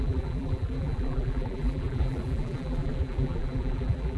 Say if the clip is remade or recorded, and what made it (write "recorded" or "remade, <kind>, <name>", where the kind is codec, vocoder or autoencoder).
remade, vocoder, BigVGAN v2